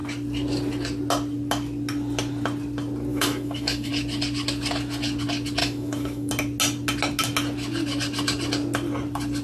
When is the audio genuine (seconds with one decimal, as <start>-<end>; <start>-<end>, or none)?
0.0-3.1; 3.9-5.6; 6.3-9.4